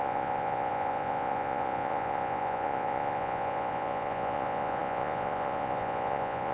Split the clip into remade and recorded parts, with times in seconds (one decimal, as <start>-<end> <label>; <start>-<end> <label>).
0.0-6.5 remade